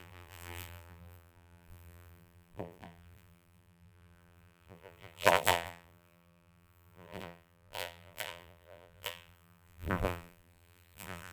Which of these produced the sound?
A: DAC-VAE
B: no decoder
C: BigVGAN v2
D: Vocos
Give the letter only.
C